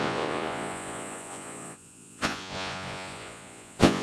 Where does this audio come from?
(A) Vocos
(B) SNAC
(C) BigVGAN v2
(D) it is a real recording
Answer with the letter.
A